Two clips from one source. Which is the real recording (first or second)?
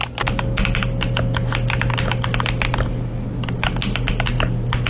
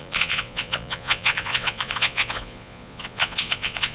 first